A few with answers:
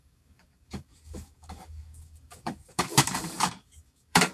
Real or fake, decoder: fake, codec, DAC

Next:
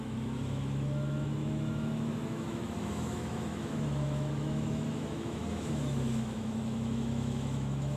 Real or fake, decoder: fake, autoencoder, DAC-VAE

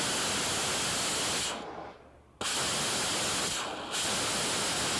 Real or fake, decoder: real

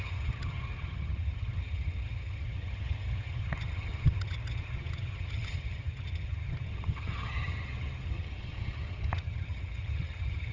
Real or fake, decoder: fake, vocoder, HiFi-GAN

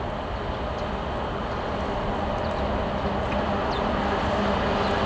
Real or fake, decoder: real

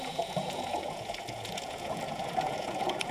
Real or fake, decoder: fake, vocoder, Vocos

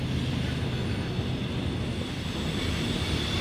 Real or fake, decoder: real